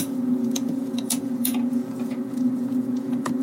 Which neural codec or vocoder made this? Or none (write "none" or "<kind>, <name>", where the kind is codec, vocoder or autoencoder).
vocoder, Vocos